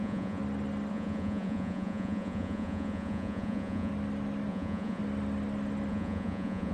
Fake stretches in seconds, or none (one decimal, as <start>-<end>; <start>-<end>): 0.0-0.4; 0.9-3.9; 4.5-5.0; 5.9-6.7